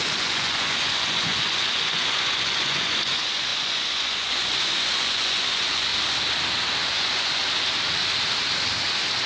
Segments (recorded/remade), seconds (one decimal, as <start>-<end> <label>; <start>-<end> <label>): 0.0-5.9 remade; 5.9-6.9 recorded; 6.9-7.4 remade; 7.4-9.3 recorded